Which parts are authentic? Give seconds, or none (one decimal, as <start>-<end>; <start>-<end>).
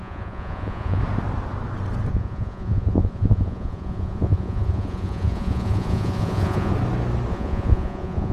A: 1.0-2.1; 6.7-7.3